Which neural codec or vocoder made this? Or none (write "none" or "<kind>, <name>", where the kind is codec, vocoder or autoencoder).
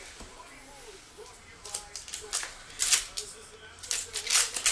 none